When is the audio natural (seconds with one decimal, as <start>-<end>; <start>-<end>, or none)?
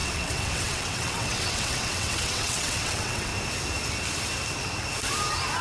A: 3.3-5.6